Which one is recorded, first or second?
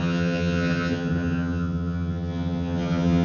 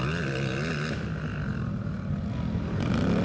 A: second